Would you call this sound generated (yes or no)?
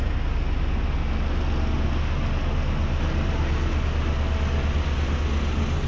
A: no